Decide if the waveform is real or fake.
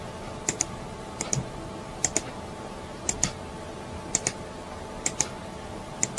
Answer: real